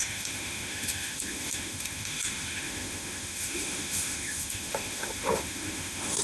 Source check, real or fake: fake